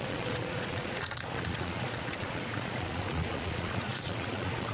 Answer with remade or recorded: remade